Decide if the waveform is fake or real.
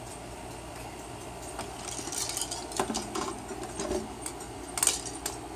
real